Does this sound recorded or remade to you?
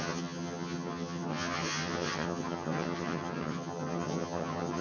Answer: remade